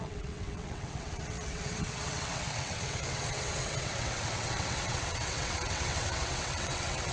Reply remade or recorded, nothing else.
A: remade